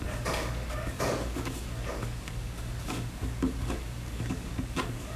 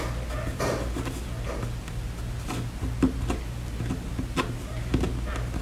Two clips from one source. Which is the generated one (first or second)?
first